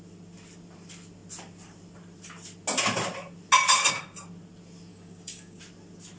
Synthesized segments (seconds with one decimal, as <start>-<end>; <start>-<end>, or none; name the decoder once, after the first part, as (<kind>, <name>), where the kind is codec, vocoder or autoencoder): 4.9-5.6 (codec, DAC)